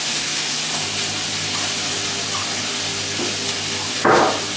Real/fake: real